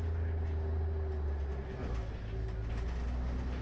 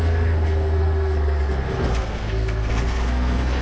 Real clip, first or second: first